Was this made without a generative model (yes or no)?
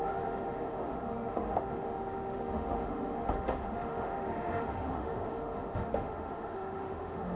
no